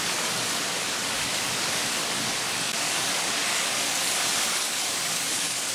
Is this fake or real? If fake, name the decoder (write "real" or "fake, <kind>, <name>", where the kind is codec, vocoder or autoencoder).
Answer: fake, codec, DAC